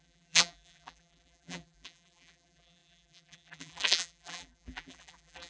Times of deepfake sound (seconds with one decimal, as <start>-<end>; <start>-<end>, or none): 0.0-5.5